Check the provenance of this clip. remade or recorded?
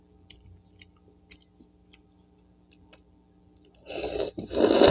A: recorded